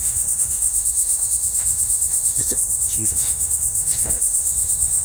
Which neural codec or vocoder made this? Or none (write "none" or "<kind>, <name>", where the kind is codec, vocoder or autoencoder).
autoencoder, DAC-VAE